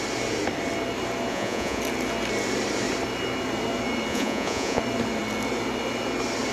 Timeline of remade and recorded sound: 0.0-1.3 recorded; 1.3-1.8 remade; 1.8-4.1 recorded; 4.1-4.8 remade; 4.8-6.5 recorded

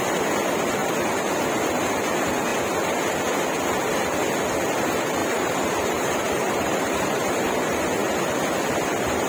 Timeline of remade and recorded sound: 0.0-5.2 recorded; 5.2-7.4 remade; 7.4-9.3 recorded

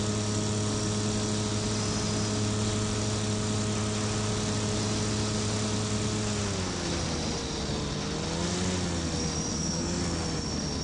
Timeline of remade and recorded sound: 0.0-9.5 recorded; 9.5-10.0 remade; 10.0-10.8 recorded